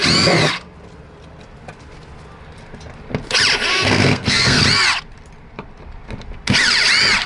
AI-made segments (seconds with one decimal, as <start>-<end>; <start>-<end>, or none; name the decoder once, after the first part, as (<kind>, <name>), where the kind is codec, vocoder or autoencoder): 3.7-4.6 (codec, SNAC)